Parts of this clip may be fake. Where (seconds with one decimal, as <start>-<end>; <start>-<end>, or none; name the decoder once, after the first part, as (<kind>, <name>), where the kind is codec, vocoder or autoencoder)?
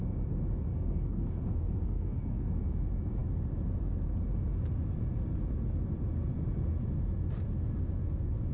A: 0.7-2.5 (codec, SNAC)